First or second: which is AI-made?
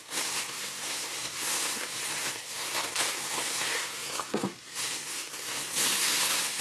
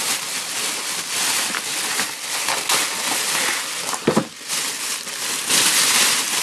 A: first